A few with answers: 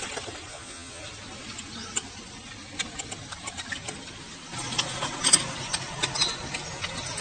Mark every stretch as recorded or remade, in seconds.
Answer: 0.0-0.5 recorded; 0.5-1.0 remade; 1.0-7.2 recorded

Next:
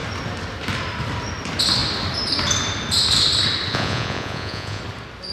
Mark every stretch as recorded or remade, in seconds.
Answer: 0.0-3.7 recorded; 3.7-4.8 remade; 4.8-5.3 recorded

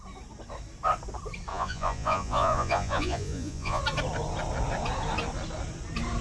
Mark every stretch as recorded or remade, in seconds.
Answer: 0.0-1.5 recorded; 1.5-3.8 remade; 3.8-6.2 recorded

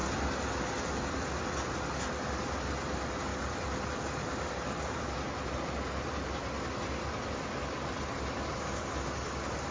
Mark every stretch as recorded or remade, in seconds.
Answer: 0.0-9.7 recorded

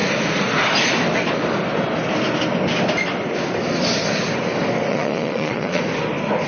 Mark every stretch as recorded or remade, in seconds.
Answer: 0.0-4.9 recorded; 4.9-5.8 remade; 5.8-6.5 recorded

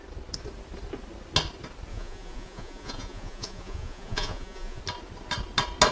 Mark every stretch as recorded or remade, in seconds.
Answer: 0.0-1.9 recorded; 1.9-4.8 remade; 4.8-5.9 recorded

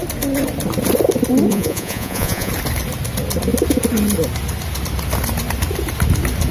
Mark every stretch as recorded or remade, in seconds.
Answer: 0.0-1.5 recorded; 1.5-2.5 remade; 2.5-6.5 recorded